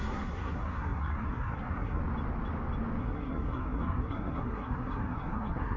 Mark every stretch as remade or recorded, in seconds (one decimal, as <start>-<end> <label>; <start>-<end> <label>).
0.0-2.0 remade; 2.0-3.0 recorded; 3.0-5.8 remade